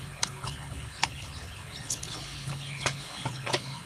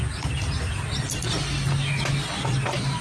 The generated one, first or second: first